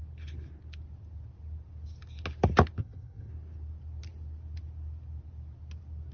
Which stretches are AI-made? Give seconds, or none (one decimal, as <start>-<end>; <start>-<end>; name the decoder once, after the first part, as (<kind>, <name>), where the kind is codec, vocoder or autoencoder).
2.8-3.3 (vocoder, HiFi-GAN)